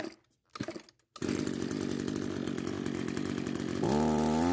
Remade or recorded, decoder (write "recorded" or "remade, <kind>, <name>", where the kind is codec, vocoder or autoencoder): recorded